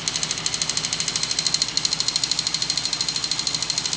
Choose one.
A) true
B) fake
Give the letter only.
A